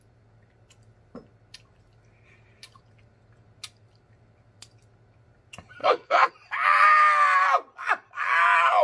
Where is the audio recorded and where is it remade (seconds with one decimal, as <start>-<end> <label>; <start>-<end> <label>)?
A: 0.0-5.8 recorded; 5.8-6.3 remade; 6.3-8.8 recorded